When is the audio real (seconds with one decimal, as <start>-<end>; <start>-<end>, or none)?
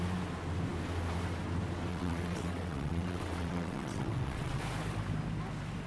0.0-1.9; 4.6-5.9